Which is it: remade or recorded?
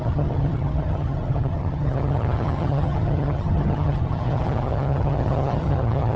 remade